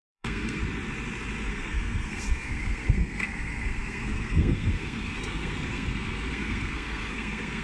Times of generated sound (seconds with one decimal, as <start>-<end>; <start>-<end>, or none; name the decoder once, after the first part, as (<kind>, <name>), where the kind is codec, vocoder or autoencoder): 0.0-0.6 (codec, SNAC); 1.5-7.6